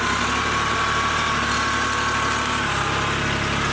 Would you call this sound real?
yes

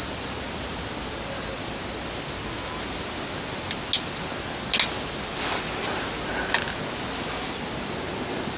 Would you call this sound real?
yes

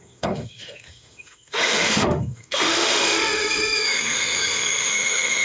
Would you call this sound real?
no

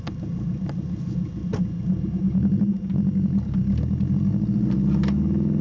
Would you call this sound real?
yes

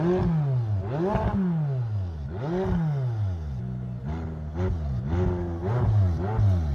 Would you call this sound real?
yes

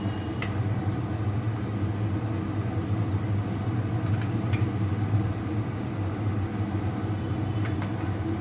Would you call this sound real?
yes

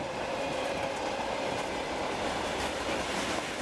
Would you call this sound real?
yes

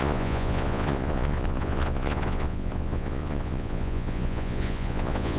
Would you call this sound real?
no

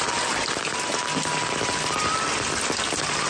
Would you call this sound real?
yes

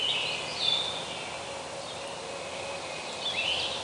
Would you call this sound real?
yes